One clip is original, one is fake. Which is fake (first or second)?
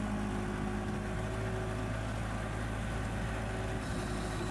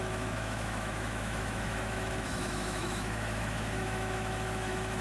second